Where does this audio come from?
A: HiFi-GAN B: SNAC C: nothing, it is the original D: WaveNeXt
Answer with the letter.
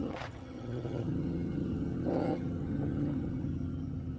A